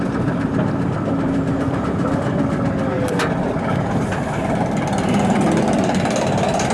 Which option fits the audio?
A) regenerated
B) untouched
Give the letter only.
B